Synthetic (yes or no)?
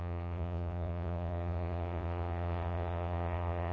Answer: yes